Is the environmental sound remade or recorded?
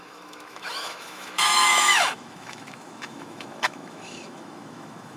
remade